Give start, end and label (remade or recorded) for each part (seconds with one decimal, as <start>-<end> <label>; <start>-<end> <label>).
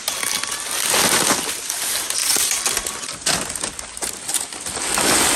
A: 0.0-5.4 recorded